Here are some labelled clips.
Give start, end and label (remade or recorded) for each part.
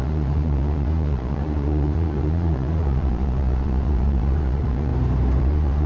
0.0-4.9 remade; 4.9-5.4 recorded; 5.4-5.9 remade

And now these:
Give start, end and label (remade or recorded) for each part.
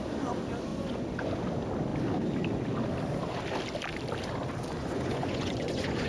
0.0-0.7 recorded; 0.7-1.3 remade; 1.3-4.8 recorded; 4.8-6.1 remade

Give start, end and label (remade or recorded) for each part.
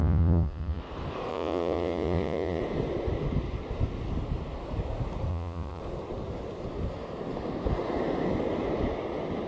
0.0-0.8 remade; 0.8-1.3 recorded; 1.3-2.6 remade; 2.6-5.3 recorded; 5.3-5.8 remade; 5.8-9.5 recorded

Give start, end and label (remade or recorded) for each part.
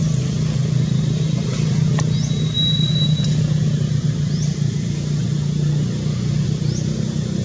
0.0-7.4 recorded